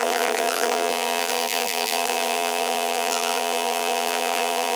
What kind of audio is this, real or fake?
fake